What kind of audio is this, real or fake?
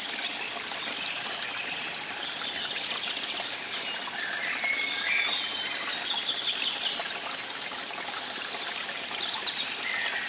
real